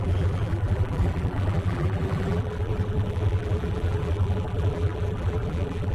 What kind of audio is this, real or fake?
fake